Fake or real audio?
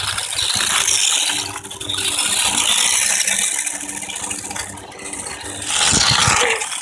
real